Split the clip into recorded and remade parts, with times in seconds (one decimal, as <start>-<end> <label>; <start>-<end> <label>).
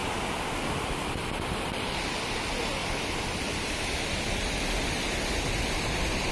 0.0-6.3 recorded